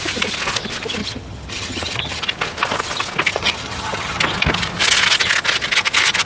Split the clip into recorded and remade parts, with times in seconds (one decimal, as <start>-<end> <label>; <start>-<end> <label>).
0.0-1.0 recorded; 1.0-2.2 remade; 2.2-3.3 recorded; 3.3-4.2 remade; 4.2-6.3 recorded